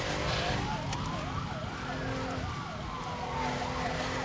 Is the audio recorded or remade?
recorded